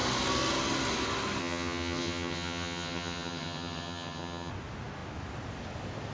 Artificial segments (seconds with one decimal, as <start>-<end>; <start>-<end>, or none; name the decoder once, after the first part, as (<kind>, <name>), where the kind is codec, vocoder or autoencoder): 1.4-4.5 (vocoder, HiFi-GAN)